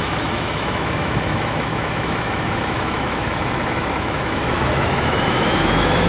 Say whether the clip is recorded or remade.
remade